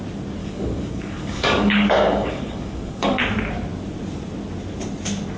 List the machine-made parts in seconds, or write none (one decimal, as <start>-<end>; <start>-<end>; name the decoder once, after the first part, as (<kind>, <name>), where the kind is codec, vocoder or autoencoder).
0.4-3.2 (codec, DAC)